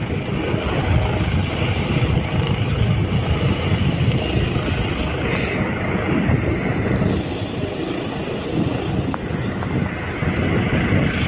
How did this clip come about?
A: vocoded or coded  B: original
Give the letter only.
B